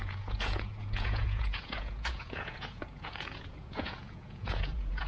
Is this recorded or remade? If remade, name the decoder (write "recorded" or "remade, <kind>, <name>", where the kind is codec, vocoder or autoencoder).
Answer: remade, vocoder, Vocos